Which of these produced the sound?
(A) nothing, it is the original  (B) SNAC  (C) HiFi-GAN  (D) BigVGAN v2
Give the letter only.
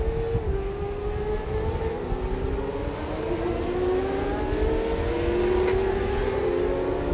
A